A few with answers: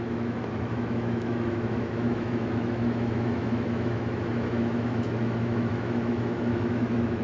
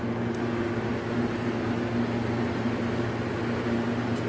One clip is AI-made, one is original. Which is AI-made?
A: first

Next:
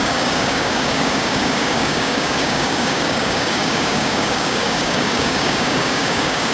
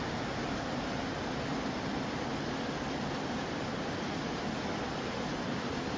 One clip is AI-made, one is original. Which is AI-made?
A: first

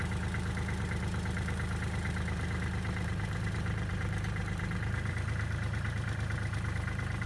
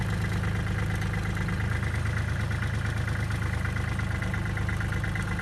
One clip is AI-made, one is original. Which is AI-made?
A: first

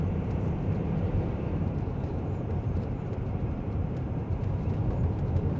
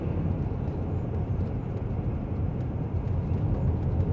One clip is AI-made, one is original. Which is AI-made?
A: first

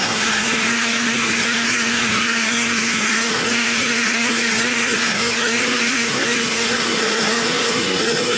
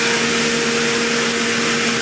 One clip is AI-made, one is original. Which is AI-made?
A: first